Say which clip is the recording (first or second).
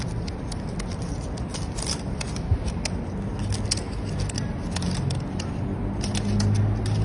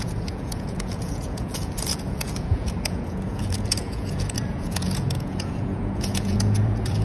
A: first